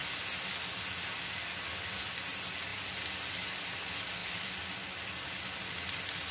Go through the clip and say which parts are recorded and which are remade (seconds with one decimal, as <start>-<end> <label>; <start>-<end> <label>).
0.0-6.3 recorded